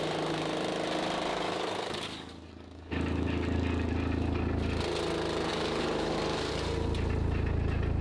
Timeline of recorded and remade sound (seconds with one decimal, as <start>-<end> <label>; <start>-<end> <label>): 0.0-1.3 recorded; 1.3-3.9 remade; 3.9-5.5 recorded; 5.5-6.5 remade; 6.5-8.0 recorded